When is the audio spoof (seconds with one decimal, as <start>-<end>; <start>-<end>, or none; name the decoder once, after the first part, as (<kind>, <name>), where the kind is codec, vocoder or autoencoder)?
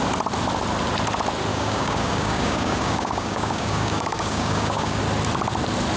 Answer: 1.5-5.0 (codec, DAC)